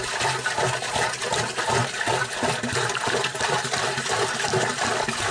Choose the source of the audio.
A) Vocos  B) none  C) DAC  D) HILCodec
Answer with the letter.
B